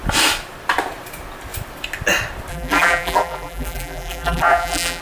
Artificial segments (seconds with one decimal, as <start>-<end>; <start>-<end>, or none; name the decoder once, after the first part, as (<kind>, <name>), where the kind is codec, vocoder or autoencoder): 2.5-5.0 (vocoder, BigVGAN v2)